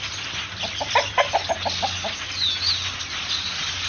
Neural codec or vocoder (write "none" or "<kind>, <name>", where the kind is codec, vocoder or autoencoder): none